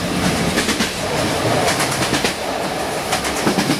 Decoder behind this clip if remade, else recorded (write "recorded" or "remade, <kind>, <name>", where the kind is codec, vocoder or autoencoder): recorded